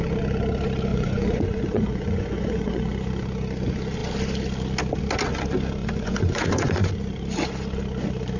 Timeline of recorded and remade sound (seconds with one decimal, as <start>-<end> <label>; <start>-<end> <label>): 0.0-0.9 recorded; 0.9-2.9 remade; 2.9-5.8 recorded; 5.8-6.9 remade; 6.9-8.4 recorded